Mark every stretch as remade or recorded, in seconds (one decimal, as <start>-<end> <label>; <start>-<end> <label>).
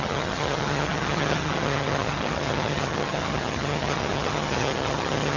0.0-5.4 remade